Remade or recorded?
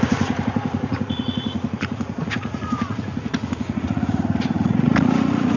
remade